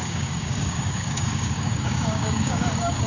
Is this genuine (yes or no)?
no